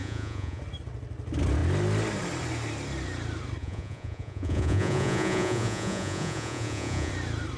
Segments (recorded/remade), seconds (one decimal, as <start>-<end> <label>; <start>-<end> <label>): 0.0-0.6 remade; 0.6-3.6 recorded; 3.6-7.1 remade; 7.1-7.6 recorded